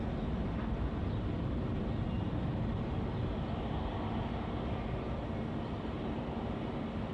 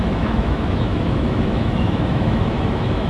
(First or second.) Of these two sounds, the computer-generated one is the second